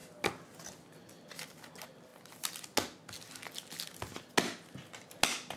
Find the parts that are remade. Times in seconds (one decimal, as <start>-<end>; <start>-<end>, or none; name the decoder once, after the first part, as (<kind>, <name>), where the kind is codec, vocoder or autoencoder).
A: none

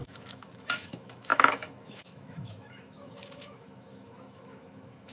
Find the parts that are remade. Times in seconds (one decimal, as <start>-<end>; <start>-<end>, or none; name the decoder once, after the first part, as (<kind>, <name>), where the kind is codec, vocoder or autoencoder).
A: 0.0-5.1 (autoencoder, DAC-VAE)